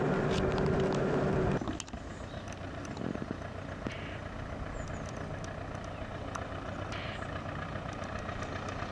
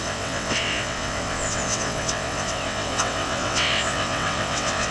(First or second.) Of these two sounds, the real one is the first